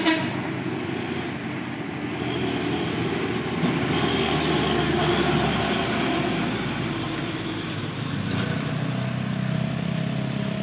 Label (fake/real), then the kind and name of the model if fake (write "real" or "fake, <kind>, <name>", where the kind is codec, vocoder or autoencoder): real